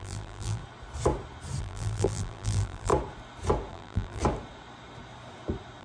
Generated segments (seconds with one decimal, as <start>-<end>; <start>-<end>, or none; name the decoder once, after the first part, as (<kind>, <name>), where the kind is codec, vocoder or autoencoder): 0.0-0.6 (vocoder, BigVGAN v2); 1.6-2.9; 3.7-4.2